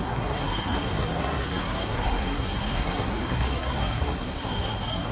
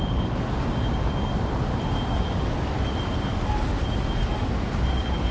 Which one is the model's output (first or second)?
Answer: first